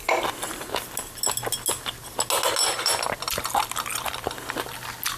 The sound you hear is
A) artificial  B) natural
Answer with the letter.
B